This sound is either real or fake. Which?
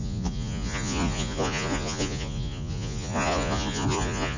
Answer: fake